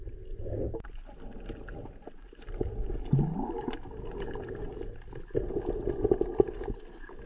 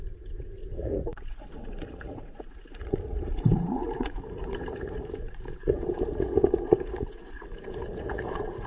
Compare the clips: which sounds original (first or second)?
first